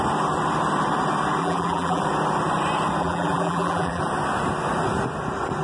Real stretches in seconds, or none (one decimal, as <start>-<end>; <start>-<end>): 0.0-1.4; 2.0-3.0; 4.0-5.6